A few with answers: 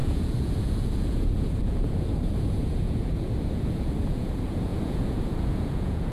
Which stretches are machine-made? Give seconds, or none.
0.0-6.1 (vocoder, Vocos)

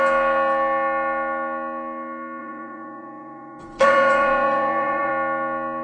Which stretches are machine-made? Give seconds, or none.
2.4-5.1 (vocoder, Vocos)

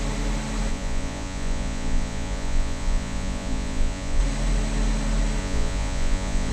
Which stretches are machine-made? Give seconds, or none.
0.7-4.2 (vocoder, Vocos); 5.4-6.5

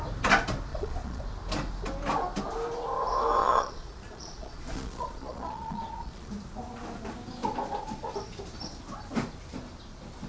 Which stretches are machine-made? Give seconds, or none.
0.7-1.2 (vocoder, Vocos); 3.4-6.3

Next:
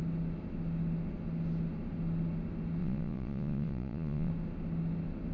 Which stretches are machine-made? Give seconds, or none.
2.8-4.3 (vocoder, Vocos)